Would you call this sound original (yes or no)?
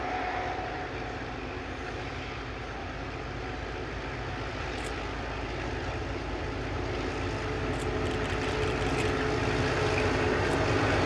yes